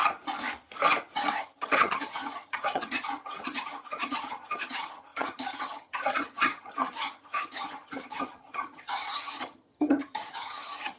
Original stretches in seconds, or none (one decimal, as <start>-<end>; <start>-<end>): 0.0-1.3